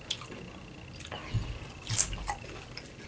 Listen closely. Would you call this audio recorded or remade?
recorded